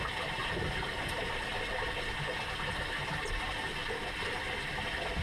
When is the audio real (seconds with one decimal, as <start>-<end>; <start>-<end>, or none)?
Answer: 0.0-3.8; 4.6-5.2